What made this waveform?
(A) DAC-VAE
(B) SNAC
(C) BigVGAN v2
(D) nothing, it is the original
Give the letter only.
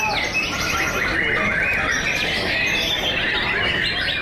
D